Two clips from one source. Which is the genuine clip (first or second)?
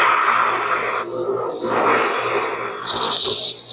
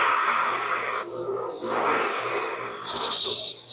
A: first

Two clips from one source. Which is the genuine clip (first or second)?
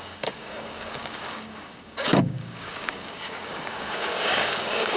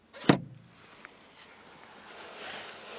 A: second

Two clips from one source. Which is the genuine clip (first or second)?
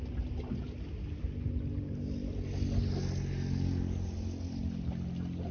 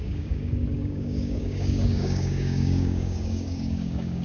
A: first